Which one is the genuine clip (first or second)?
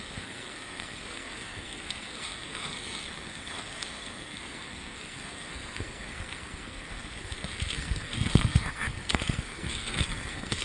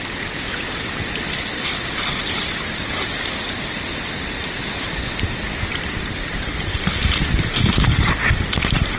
second